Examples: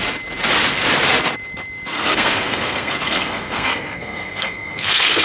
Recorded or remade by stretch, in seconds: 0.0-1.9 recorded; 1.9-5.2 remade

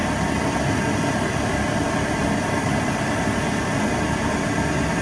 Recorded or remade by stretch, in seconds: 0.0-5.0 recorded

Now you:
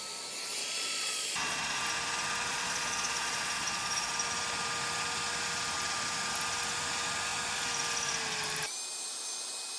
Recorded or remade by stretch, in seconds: 0.0-0.6 recorded; 0.6-1.8 remade; 1.8-2.5 recorded; 2.5-4.1 remade; 4.1-9.8 recorded